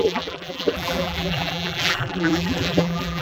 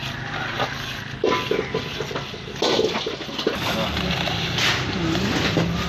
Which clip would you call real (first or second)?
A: second